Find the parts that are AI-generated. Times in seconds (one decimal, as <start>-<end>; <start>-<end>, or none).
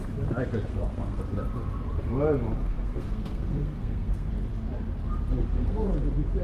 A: 0.7-1.2; 2.6-4.3; 5.4-5.9